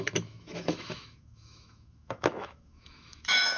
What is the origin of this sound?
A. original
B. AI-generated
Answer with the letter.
B